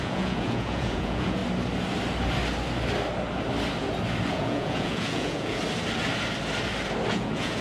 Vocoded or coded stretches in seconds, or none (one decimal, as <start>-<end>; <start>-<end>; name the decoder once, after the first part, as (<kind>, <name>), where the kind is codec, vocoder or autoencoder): 0.0-1.4 (vocoder, Vocos); 4.3-5.6; 7.1-7.6